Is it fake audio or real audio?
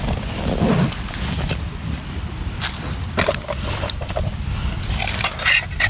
real